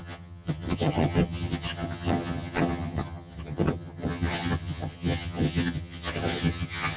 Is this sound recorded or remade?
remade